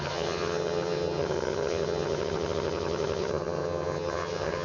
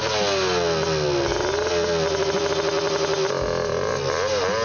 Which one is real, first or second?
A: second